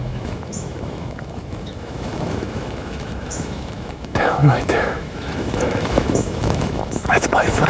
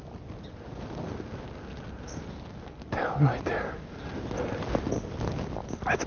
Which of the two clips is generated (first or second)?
first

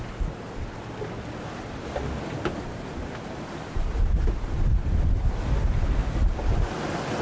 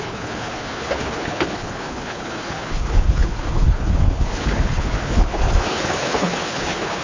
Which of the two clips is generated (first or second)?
second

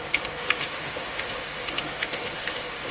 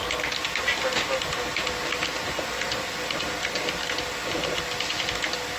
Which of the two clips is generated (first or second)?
first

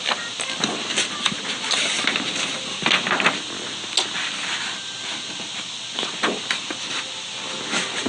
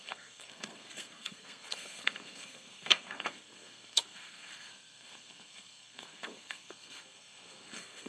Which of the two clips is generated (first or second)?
second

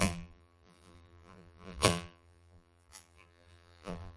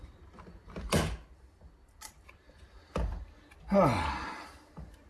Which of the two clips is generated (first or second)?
first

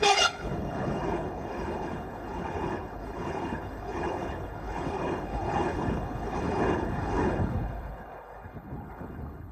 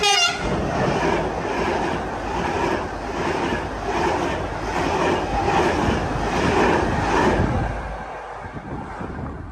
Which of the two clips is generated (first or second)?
first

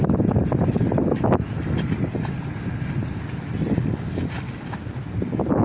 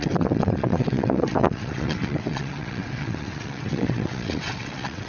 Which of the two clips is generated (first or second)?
second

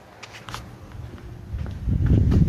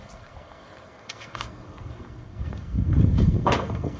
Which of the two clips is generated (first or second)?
second